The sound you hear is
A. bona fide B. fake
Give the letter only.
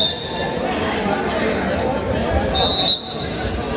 A